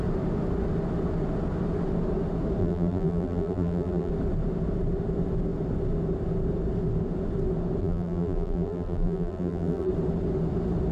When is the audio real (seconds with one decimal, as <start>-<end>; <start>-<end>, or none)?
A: 0.0-2.6; 4.1-7.8; 9.9-10.9